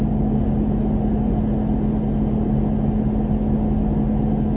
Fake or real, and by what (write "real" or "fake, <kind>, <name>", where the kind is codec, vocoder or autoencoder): real